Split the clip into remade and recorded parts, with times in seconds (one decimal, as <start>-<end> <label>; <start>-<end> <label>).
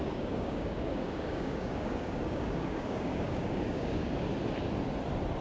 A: 0.0-4.3 remade; 4.3-5.4 recorded